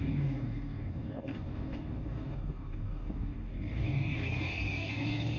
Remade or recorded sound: remade